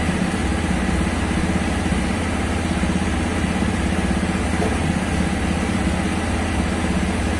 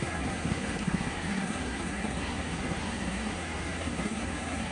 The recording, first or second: first